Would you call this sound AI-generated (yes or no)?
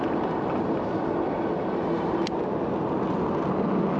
no